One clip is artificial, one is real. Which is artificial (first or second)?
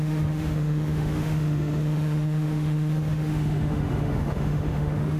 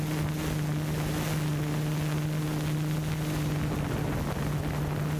first